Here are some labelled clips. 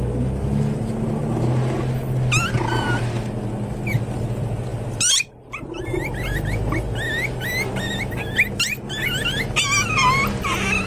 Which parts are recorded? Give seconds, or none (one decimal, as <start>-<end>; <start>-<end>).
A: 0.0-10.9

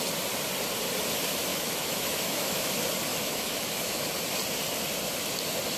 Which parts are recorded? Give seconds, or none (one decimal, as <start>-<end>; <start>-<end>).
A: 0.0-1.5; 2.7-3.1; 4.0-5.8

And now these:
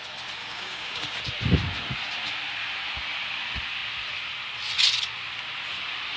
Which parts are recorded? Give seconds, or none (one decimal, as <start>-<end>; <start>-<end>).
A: 0.0-0.4; 1.0-6.2

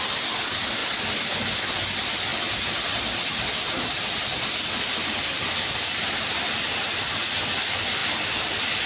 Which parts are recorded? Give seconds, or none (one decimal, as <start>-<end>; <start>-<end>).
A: 0.0-8.9

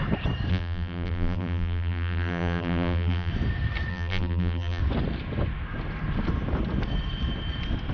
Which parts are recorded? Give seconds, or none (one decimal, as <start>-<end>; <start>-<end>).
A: 0.0-0.5; 3.3-3.9; 4.8-7.9

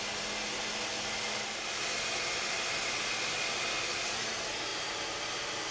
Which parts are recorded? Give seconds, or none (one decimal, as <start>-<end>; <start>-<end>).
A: 0.0-5.7

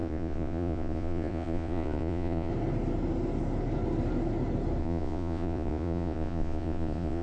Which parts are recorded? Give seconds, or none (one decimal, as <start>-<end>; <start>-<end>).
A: 2.5-4.8